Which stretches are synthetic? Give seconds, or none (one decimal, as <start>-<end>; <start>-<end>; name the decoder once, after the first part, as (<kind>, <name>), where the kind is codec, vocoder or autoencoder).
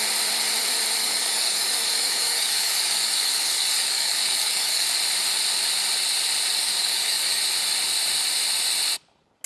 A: 1.0-4.9 (codec, DAC); 6.6-7.4